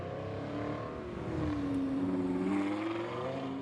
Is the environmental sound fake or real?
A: real